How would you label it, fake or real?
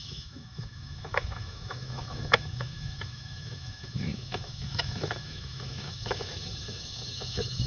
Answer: fake